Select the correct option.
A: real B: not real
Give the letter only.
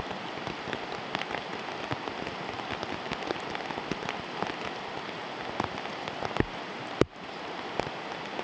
A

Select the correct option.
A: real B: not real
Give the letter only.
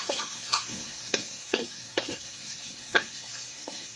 B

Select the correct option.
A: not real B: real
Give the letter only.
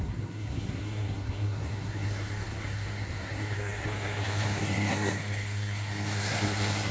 A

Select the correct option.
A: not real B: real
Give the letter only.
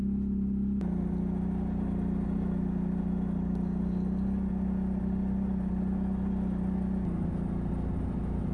B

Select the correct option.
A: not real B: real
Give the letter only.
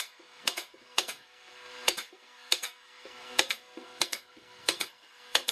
A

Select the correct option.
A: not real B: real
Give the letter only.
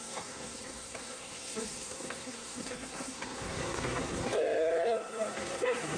A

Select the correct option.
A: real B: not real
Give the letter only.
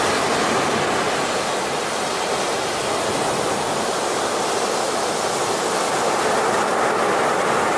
A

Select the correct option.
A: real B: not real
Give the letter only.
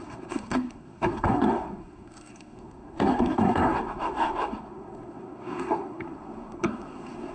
B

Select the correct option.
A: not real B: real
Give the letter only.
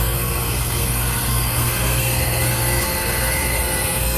A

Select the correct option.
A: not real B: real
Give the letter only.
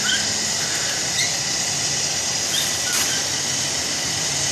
B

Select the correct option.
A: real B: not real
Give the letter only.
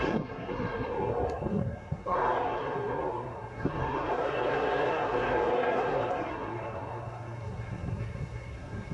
B